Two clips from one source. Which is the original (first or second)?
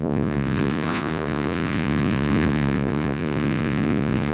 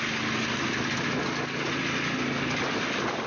second